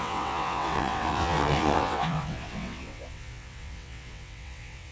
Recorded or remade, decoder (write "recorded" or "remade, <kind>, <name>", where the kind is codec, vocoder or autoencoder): remade, vocoder, WaveNeXt